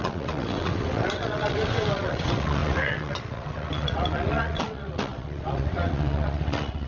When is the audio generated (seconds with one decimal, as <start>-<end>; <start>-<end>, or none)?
0.0-6.9